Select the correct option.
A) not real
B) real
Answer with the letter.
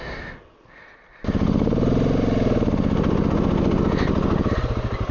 B